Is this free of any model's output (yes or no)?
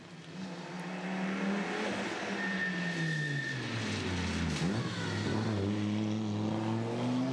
yes